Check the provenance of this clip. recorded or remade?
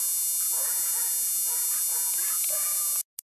recorded